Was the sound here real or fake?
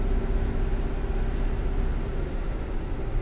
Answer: real